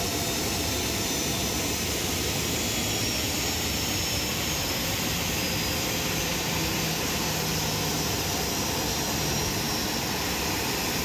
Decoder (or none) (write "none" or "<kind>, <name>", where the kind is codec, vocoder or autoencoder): none